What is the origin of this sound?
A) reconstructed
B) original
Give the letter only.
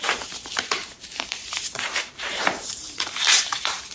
A